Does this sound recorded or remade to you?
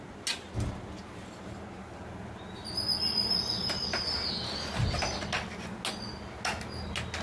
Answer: recorded